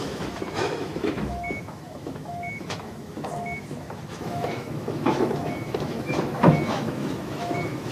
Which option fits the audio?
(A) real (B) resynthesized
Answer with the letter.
B